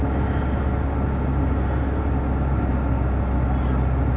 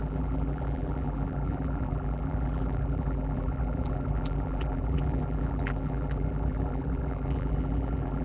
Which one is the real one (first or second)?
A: first